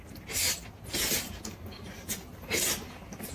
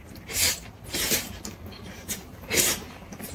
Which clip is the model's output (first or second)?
second